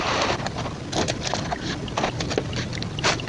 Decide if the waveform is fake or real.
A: real